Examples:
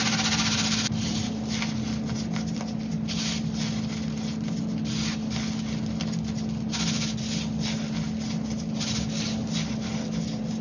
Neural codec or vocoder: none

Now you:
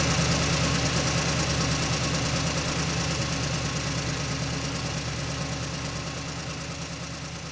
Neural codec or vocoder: none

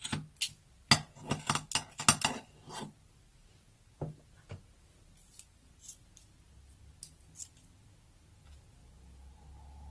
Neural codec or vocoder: none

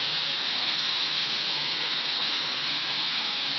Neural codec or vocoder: codec, SNAC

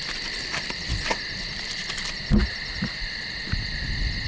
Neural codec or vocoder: none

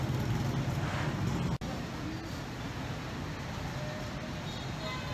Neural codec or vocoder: none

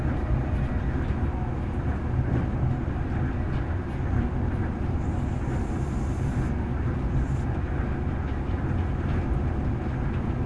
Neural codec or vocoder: none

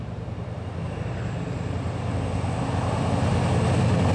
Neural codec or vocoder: none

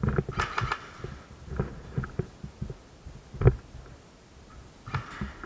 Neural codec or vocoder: none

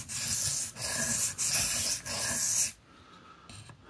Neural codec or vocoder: none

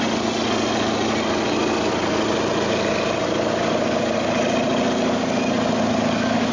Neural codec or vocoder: none